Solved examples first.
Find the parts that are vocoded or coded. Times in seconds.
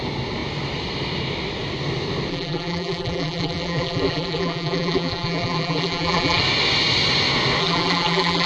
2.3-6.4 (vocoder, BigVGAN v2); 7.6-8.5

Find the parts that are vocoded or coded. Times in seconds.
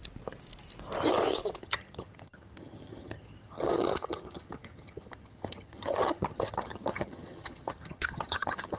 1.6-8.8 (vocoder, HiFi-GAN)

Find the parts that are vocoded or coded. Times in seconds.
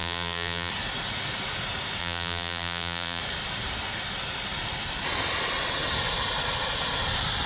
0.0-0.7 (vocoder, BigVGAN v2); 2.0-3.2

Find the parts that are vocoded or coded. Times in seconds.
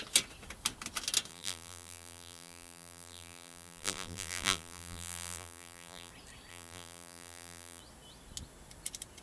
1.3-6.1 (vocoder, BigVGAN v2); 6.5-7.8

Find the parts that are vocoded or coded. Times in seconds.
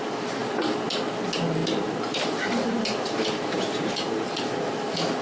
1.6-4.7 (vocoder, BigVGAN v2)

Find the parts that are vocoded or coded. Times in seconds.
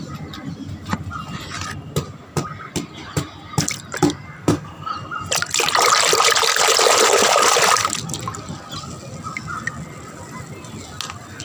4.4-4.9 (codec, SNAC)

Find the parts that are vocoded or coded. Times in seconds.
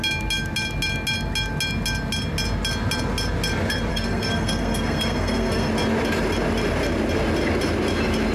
3.9-5.7 (codec, SNAC)